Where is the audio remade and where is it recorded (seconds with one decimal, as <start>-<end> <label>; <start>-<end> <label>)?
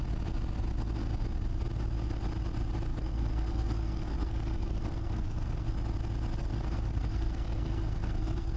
0.0-2.9 recorded; 2.9-5.7 remade; 5.7-6.4 recorded; 6.4-8.6 remade